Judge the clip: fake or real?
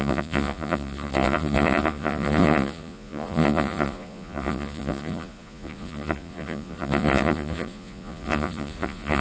fake